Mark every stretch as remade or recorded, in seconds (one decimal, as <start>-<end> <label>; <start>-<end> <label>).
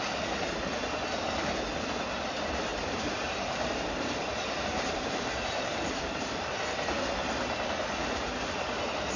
0.0-2.7 recorded; 2.7-6.0 remade; 6.0-8.0 recorded; 8.0-9.2 remade